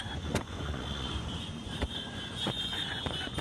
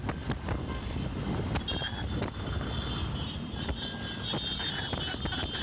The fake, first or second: first